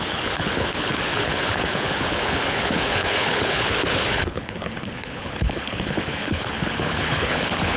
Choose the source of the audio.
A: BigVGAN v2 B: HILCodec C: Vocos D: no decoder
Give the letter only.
B